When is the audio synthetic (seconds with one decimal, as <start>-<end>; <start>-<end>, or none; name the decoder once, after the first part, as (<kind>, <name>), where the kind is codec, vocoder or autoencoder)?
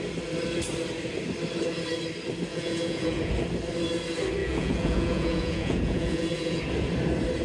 2.5-3.3 (vocoder, Vocos); 4.4-6.6